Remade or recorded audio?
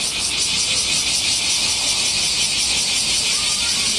recorded